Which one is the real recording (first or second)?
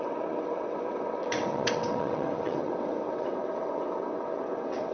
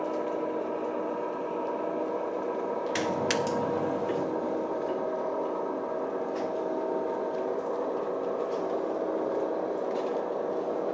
second